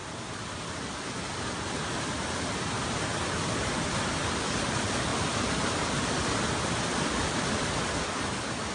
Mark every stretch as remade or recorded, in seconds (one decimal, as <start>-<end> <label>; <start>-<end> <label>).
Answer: 0.0-8.7 recorded